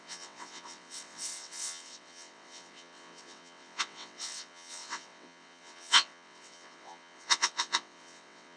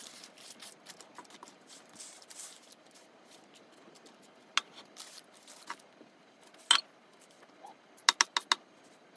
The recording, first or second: second